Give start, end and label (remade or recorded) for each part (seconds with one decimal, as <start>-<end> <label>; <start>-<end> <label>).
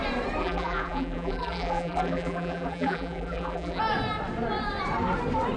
0.0-0.4 recorded; 0.4-3.8 remade; 3.8-5.6 recorded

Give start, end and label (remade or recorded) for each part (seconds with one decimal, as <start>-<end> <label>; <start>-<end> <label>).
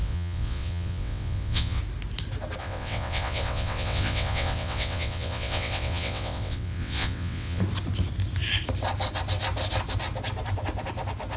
0.0-1.8 remade; 1.8-2.6 recorded; 2.6-7.6 remade; 7.6-11.4 recorded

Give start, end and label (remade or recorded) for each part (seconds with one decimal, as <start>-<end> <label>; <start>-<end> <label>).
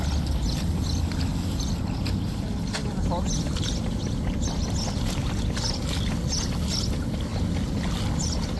0.0-2.8 recorded; 2.8-3.5 remade; 3.5-7.3 recorded; 7.3-7.9 remade; 7.9-8.6 recorded